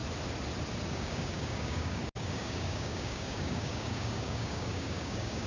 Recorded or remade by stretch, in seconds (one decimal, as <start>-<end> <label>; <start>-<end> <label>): 0.0-0.9 recorded; 0.9-5.5 remade